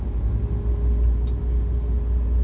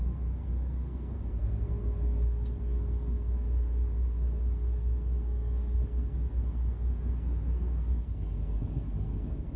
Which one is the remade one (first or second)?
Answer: second